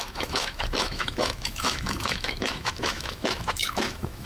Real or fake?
fake